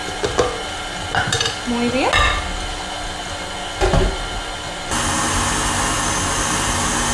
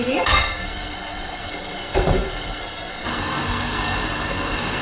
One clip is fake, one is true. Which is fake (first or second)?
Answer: second